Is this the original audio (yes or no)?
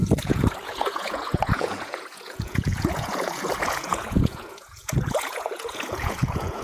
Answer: no